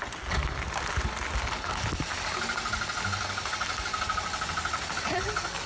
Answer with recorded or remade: recorded